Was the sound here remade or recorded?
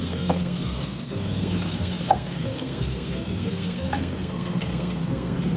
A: remade